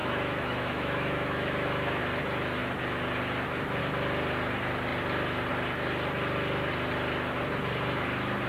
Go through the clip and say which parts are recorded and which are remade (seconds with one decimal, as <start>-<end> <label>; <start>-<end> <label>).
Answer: 0.0-2.0 remade; 2.0-8.5 recorded